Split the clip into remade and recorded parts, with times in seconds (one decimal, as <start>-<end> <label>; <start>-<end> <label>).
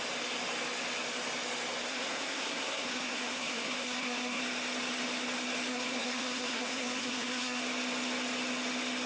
0.0-1.9 recorded; 1.9-4.4 remade; 4.4-5.7 recorded; 5.7-7.6 remade; 7.6-9.1 recorded